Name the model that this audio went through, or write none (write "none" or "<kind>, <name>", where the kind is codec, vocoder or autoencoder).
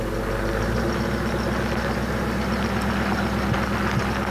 none